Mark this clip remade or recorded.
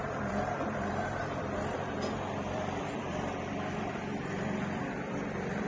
remade